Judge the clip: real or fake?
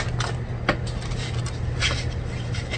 real